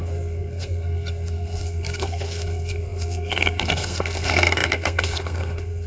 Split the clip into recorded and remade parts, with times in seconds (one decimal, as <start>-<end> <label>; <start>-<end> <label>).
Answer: 0.0-5.9 remade

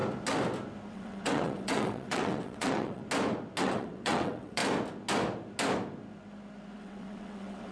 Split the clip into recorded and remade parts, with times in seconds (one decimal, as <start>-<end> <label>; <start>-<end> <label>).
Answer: 0.0-0.9 recorded; 0.9-3.0 remade; 3.0-3.6 recorded; 3.6-4.6 remade; 4.6-6.8 recorded; 6.8-7.7 remade

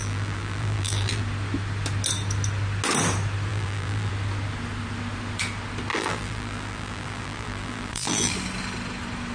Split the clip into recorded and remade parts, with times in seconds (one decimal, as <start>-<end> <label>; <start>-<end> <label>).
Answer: 0.0-1.2 remade; 1.2-3.5 recorded; 3.5-4.1 remade; 4.1-5.9 recorded; 5.9-8.3 remade; 8.3-9.3 recorded

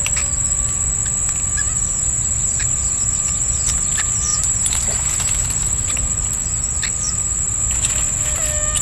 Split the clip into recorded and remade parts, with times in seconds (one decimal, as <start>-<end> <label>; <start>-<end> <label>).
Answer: 0.0-4.3 recorded; 4.3-5.2 remade; 5.2-8.8 recorded